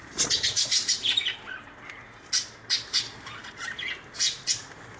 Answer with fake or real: real